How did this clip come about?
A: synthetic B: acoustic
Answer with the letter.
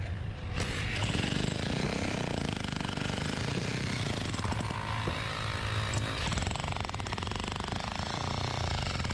A